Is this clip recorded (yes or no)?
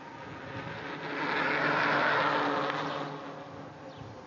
yes